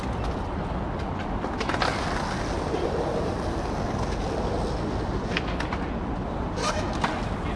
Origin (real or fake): real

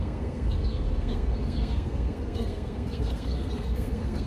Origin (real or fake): fake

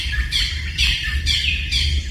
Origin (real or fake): real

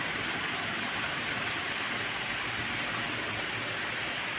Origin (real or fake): real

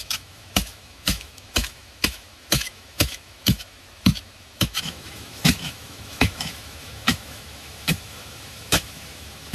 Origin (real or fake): fake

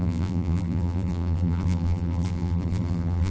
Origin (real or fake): fake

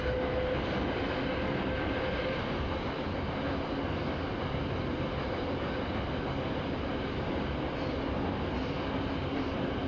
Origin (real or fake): real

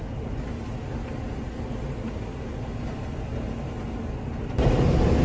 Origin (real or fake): real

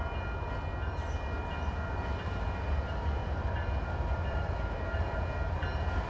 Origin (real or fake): real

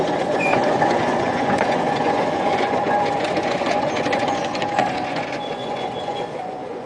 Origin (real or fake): fake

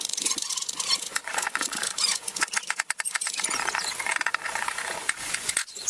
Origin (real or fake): fake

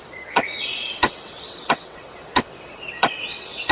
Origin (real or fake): fake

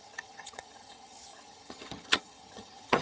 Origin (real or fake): fake